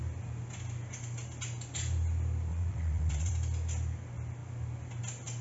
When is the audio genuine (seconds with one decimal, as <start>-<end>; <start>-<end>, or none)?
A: 0.0-2.5; 3.3-5.4